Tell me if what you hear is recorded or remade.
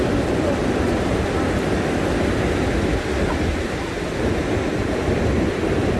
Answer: recorded